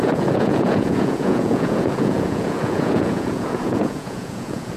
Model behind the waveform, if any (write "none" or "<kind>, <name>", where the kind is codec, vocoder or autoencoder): vocoder, Vocos